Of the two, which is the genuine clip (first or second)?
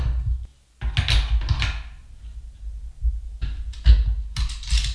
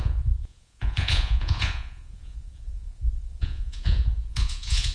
first